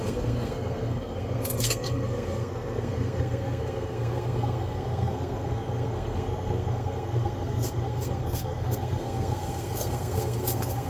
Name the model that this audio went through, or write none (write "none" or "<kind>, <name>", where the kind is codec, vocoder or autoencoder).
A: codec, SNAC